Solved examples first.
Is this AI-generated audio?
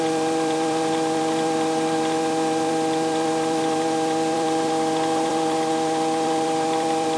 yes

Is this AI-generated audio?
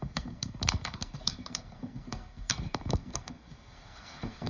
yes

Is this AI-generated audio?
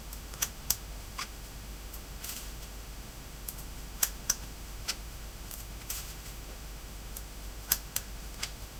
yes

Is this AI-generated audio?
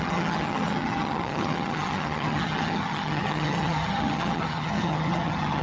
yes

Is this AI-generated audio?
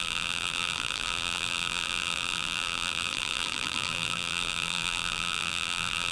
yes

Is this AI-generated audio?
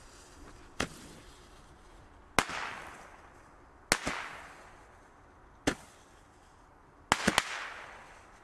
no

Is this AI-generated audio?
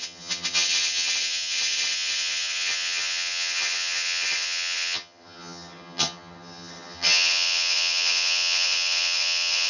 yes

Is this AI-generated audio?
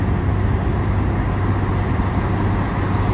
no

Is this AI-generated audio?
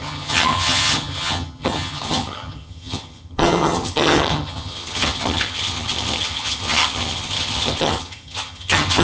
yes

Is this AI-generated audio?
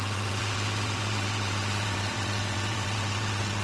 yes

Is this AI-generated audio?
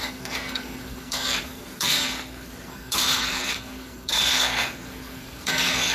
yes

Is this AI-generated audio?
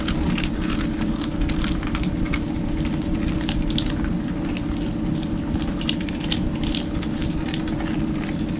no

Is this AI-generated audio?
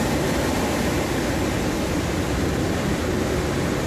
no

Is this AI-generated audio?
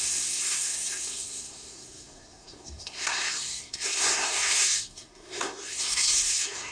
yes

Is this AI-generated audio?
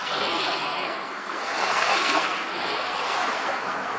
yes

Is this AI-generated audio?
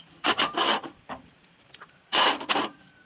yes